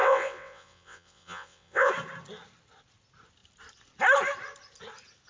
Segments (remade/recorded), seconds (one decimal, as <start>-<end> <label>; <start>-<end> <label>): 0.0-1.9 remade; 1.9-5.3 recorded